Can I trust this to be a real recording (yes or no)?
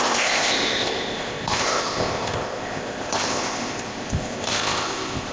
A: no